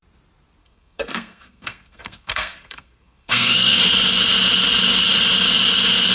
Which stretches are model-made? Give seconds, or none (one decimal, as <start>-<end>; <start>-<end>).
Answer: 0.6-3.9